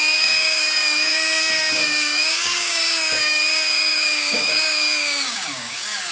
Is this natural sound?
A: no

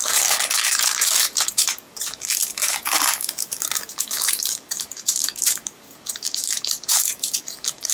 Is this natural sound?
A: no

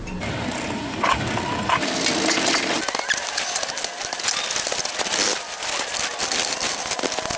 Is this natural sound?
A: yes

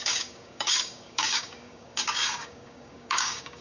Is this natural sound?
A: no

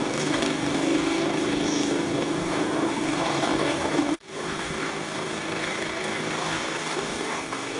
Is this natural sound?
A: no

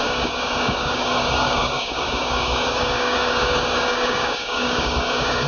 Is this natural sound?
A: no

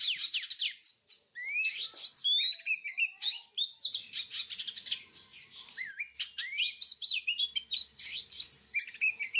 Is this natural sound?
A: yes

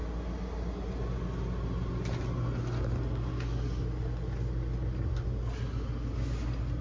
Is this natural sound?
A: yes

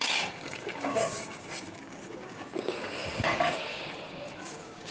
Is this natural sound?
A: no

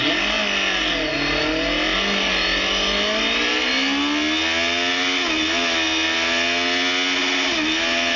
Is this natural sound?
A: yes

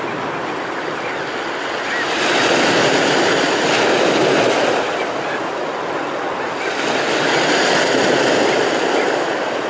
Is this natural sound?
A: yes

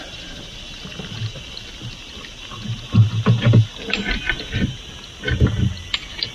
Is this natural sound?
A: yes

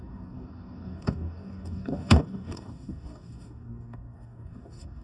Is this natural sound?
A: no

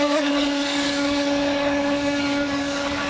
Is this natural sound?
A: no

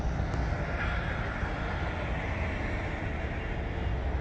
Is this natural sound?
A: yes